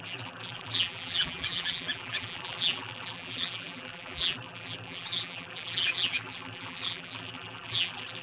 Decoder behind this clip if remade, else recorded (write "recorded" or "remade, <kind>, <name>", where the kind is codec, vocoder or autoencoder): remade, vocoder, BigVGAN v2